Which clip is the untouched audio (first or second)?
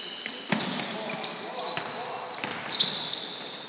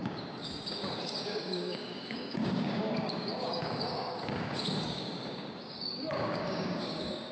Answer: first